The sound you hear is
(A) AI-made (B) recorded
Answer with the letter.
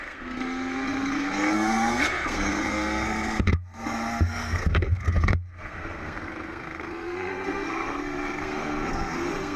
A